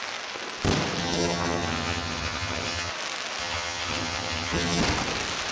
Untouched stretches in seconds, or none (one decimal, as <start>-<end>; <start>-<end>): 0.0-1.0; 2.9-3.4; 4.8-5.5